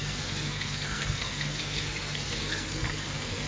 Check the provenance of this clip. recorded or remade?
remade